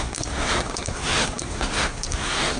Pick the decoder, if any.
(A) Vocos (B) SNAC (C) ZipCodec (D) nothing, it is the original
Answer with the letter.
B